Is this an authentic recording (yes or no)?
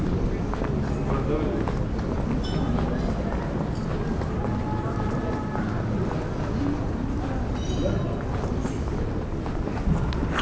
yes